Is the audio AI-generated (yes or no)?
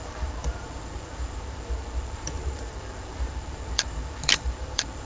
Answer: yes